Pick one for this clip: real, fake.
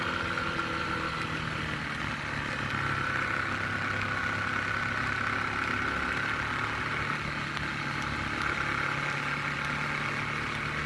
real